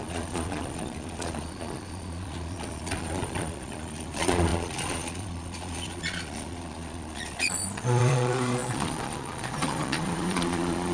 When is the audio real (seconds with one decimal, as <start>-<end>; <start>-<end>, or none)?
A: none